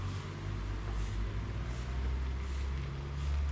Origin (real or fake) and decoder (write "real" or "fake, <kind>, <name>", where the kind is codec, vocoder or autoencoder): real